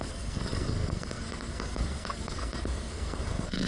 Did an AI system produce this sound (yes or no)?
yes